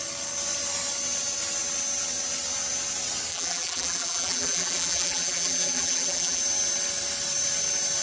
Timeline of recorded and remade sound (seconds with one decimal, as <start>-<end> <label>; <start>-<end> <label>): 0.0-3.3 recorded; 3.3-6.4 remade; 6.4-8.0 recorded